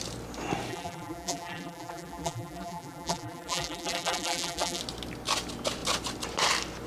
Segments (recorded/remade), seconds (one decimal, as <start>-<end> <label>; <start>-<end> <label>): 0.0-0.7 recorded; 0.7-4.8 remade; 4.8-6.9 recorded